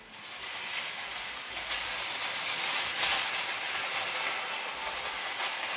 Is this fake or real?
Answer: real